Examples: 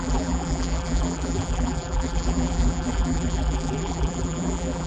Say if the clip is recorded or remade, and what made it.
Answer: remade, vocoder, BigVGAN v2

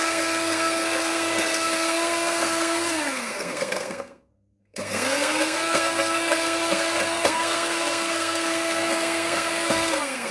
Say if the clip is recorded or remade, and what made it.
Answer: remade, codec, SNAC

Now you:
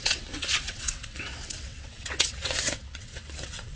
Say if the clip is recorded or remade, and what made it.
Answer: remade, vocoder, WaveNeXt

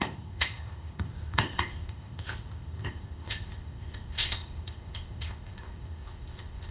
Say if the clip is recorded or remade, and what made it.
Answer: remade, codec, ZipCodec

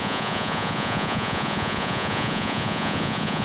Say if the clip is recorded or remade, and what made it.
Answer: remade, vocoder, Vocos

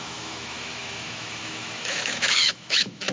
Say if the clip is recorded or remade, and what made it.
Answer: remade, autoencoder, DAC-VAE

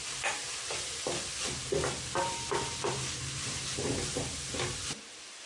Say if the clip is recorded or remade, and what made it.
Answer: recorded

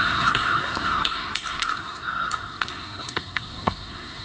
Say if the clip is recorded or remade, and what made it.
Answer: remade, codec, SNAC